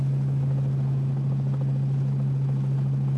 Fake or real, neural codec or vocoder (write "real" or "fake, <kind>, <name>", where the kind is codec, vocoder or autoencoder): real